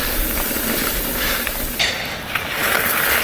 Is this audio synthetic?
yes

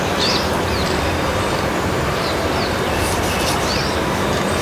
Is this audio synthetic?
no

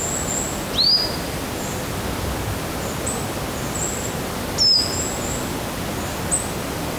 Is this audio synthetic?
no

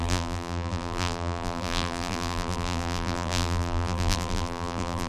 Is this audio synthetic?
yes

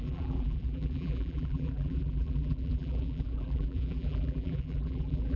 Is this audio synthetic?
yes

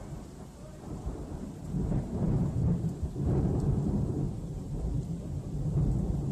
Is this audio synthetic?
yes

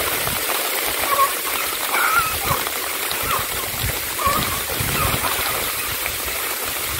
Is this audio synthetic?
yes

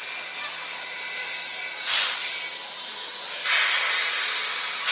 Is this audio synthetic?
no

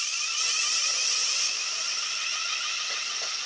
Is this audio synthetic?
no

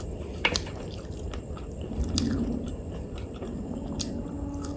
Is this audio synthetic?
yes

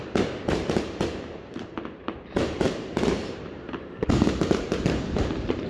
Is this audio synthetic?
yes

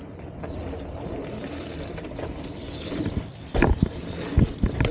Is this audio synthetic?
yes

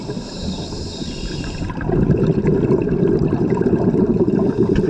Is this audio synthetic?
yes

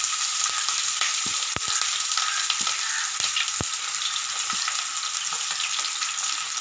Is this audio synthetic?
yes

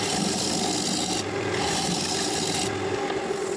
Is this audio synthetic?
no